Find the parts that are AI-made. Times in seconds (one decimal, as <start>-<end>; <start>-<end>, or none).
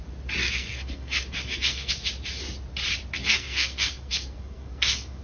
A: 0.4-1.9; 3.2-5.2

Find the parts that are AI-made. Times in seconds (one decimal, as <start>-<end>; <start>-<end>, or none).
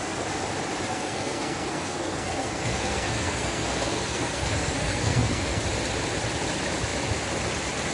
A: 0.9-5.6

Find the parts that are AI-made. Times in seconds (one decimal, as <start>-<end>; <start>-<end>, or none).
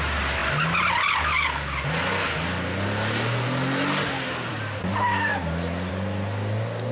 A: none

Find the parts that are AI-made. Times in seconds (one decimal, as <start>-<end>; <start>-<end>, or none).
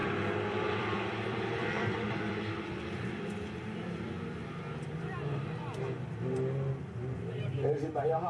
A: 0.0-4.1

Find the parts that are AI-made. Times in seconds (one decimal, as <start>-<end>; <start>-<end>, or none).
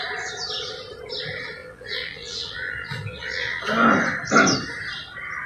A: 1.6-3.6